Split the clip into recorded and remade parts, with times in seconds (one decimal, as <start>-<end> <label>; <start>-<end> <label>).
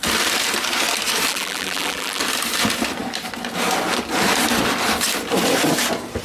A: 0.0-1.3 recorded; 1.3-2.2 remade; 2.2-6.2 recorded